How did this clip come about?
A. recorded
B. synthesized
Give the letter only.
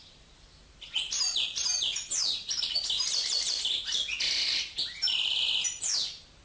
A